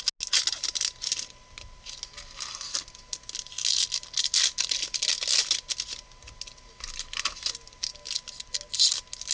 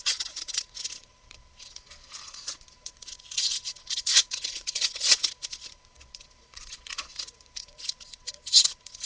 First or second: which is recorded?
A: first